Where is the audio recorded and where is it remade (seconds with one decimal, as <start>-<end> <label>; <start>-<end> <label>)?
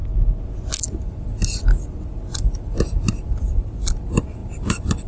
0.0-0.8 recorded; 0.8-1.3 remade; 1.3-3.3 recorded; 3.3-5.1 remade